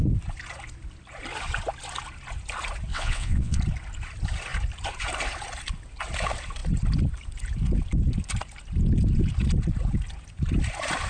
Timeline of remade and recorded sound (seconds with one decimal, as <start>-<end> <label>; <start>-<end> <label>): 0.0-2.9 recorded; 2.9-3.6 remade; 3.6-11.1 recorded